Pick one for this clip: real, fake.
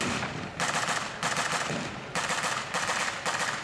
fake